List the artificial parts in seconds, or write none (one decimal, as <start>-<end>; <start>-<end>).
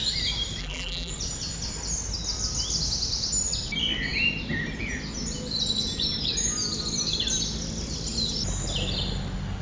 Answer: 0.6-1.1